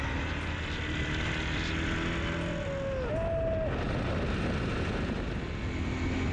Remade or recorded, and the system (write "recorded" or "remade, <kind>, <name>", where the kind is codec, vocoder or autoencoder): recorded